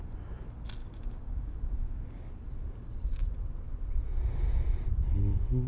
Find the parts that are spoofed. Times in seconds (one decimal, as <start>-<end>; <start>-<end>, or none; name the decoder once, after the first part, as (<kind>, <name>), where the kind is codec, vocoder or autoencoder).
0.8-2.3 (codec, DAC)